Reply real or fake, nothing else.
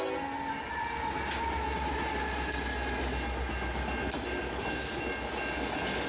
real